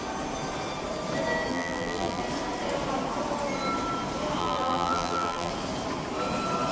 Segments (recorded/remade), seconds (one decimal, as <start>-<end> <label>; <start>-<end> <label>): 0.0-1.5 recorded; 1.5-2.2 remade; 2.2-4.4 recorded; 4.4-5.5 remade; 5.5-6.7 recorded